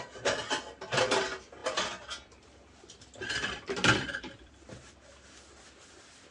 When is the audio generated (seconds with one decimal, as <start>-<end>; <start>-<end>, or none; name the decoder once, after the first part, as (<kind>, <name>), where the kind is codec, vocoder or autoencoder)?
1.6-5.4 (vocoder, BigVGAN v2)